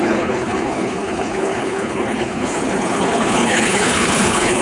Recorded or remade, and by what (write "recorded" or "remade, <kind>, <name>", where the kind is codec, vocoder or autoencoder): remade, codec, HILCodec